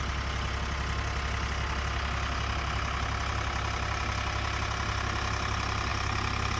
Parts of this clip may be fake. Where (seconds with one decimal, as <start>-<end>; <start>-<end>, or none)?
none